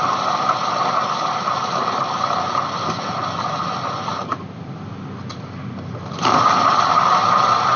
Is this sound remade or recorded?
recorded